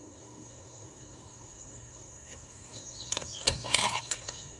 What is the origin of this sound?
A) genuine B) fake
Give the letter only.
B